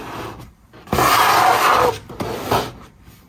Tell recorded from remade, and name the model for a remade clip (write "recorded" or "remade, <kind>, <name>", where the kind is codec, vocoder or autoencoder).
remade, vocoder, BigVGAN v2